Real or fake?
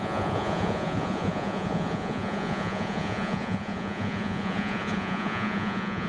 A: fake